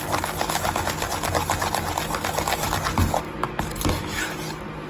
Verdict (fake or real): real